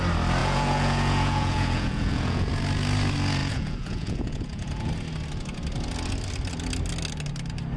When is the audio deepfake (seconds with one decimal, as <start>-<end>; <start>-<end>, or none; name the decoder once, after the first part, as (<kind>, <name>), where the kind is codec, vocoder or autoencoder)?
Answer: 0.4-2.5 (vocoder, Vocos); 3.4-4.9